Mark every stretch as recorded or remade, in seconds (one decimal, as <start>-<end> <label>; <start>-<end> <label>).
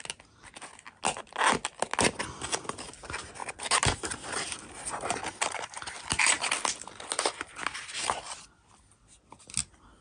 0.0-10.0 recorded